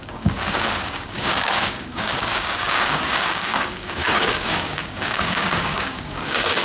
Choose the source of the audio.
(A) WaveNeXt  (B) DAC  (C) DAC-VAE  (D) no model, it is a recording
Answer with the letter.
B